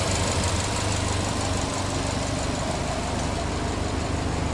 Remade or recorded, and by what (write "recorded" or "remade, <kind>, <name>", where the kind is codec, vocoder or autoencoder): recorded